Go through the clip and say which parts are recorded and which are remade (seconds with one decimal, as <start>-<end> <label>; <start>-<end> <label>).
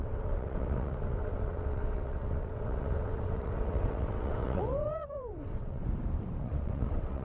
0.0-5.8 remade; 5.8-6.4 recorded; 6.4-7.2 remade